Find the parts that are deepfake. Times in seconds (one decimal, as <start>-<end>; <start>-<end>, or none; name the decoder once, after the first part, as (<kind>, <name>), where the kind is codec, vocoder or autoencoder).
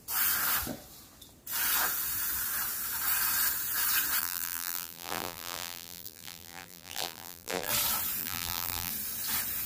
4.2-7.7 (vocoder, BigVGAN v2); 8.2-8.9